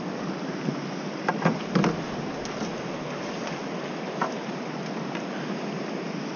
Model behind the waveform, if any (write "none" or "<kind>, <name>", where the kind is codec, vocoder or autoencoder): none